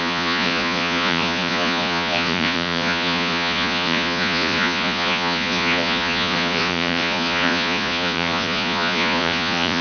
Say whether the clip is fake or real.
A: fake